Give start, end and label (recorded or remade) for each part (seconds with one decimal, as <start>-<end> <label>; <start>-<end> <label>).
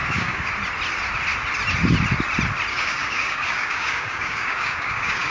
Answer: 0.0-0.5 remade; 0.5-2.7 recorded; 2.7-5.3 remade